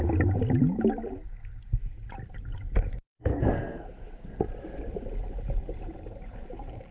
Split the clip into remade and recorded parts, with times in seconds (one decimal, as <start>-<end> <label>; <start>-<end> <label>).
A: 0.0-3.3 recorded; 3.3-4.4 remade; 4.4-6.9 recorded